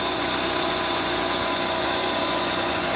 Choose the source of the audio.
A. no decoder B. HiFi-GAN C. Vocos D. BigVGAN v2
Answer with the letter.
C